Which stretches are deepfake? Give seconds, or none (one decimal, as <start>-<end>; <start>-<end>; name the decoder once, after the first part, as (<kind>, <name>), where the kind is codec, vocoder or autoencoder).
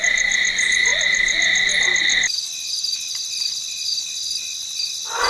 none